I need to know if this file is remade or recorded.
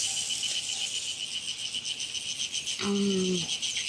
recorded